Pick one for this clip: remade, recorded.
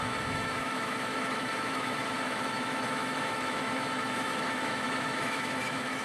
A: remade